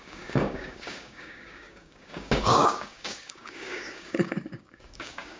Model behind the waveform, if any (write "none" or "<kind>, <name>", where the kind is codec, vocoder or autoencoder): codec, DAC